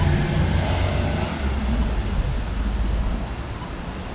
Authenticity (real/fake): real